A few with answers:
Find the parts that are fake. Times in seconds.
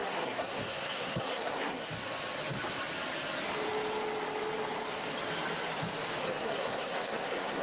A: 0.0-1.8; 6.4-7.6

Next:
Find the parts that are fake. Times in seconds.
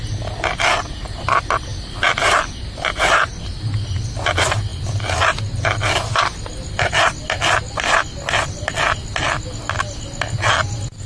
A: none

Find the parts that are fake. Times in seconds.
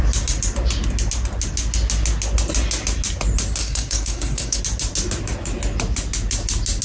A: 3.6-4.6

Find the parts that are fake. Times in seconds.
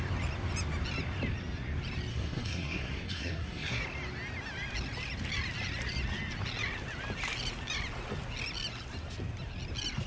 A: 2.1-3.8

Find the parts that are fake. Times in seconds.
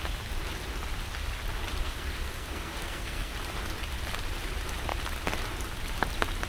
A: 1.8-3.3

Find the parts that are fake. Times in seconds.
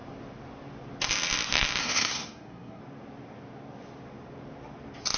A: 1.8-2.8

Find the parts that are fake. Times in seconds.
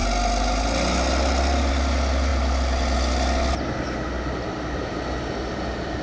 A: none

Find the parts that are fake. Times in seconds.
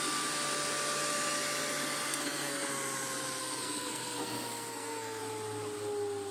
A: 2.1-2.7; 3.4-5.2